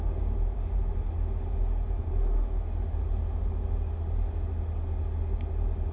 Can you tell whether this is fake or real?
real